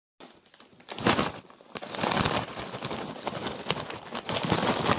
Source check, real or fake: real